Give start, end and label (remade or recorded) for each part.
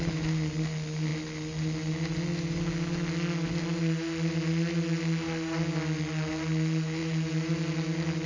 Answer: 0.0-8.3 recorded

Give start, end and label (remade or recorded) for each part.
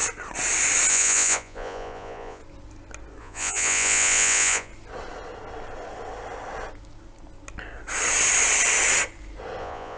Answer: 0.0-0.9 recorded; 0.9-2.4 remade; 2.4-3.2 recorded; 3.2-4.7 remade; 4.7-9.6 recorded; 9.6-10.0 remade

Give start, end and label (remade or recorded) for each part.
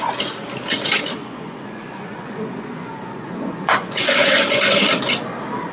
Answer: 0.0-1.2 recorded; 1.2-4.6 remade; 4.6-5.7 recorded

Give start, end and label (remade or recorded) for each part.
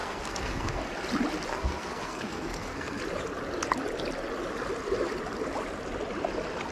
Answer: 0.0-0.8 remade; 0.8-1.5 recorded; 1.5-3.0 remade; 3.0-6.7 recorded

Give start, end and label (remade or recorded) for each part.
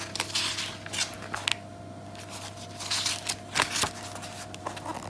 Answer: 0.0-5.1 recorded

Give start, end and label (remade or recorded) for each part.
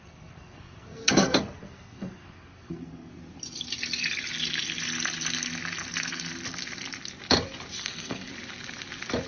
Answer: 0.0-3.2 remade; 3.2-7.8 recorded; 7.8-8.3 remade; 8.3-9.3 recorded